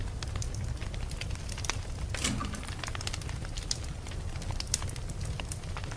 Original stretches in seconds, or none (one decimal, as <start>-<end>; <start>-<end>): 0.0-6.0